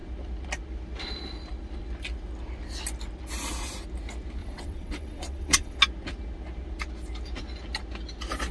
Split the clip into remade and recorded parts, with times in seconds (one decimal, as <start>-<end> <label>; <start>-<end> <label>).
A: 0.0-4.4 recorded; 4.4-5.8 remade; 5.8-8.5 recorded